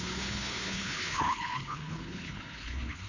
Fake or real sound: fake